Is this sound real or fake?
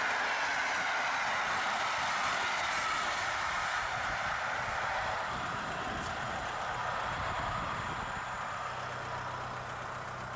real